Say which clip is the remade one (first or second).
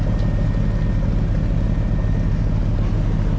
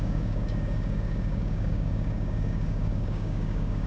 second